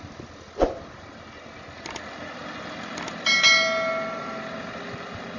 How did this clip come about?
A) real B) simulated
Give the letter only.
A